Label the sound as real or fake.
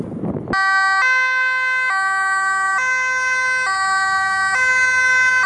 real